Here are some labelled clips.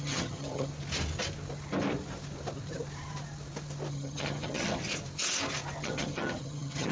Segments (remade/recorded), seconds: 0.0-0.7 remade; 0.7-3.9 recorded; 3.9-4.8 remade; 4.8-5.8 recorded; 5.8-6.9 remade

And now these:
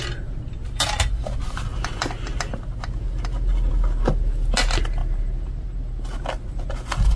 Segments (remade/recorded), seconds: 0.0-7.2 recorded

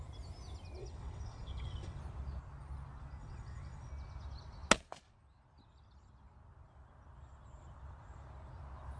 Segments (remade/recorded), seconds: 0.0-0.8 recorded; 0.8-2.0 remade; 2.0-3.2 recorded; 3.2-3.9 remade; 3.9-9.0 recorded

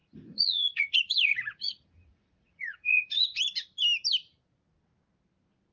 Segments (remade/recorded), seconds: 0.0-3.4 remade; 3.4-5.7 recorded

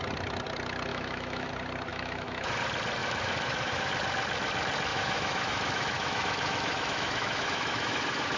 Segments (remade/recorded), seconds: 0.0-0.9 recorded; 0.9-1.5 remade; 1.5-1.9 recorded; 1.9-2.6 remade; 2.6-3.0 recorded; 3.0-3.9 remade; 3.9-4.9 recorded; 4.9-8.4 remade

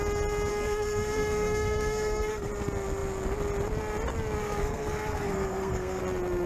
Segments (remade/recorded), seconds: 0.0-0.5 recorded; 0.5-2.5 remade; 2.5-4.4 recorded; 4.4-6.0 remade; 6.0-6.5 recorded

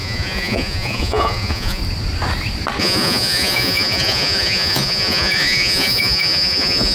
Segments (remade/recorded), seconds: 0.0-1.8 remade; 1.8-2.8 recorded; 2.8-6.9 remade

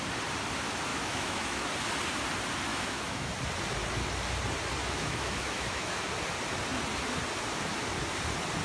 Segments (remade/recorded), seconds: 0.0-0.9 recorded; 0.9-1.7 remade; 1.7-2.7 recorded; 2.7-3.3 remade; 3.3-4.8 recorded; 4.8-6.1 remade; 6.1-8.6 recorded